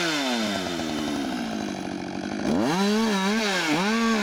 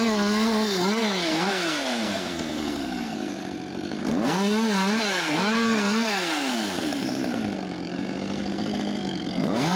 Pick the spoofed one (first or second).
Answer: second